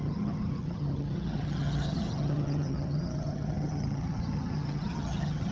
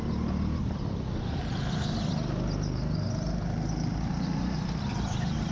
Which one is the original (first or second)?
second